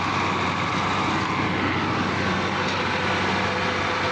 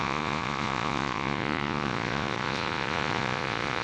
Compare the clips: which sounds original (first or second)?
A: first